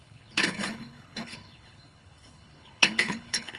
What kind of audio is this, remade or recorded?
remade